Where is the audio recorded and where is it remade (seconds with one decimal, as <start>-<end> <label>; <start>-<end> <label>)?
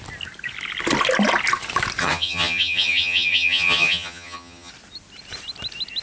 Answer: 0.0-2.0 recorded; 2.0-4.7 remade; 4.7-6.0 recorded